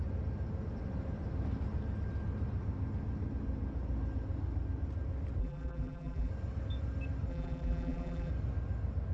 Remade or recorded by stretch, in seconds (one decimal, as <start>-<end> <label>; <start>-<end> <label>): 0.0-5.4 recorded; 5.4-6.3 remade; 6.3-7.3 recorded; 7.3-8.3 remade; 8.3-9.1 recorded